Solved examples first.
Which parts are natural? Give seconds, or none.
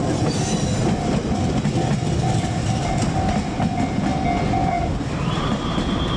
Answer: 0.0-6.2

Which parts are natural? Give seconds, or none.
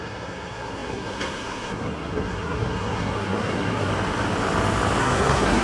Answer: 3.9-5.0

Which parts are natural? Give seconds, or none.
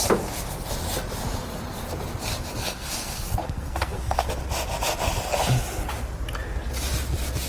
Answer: 0.0-2.6; 4.3-7.5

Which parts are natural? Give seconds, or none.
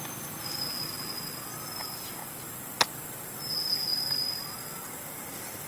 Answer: 0.0-5.7